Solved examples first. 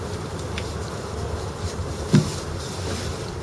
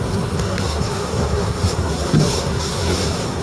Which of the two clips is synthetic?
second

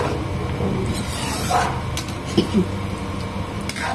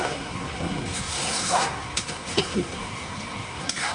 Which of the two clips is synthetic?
second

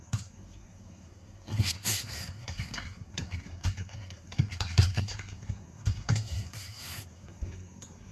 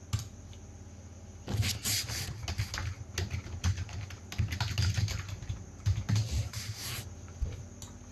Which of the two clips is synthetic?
first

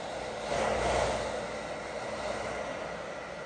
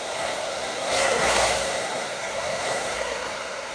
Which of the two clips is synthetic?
second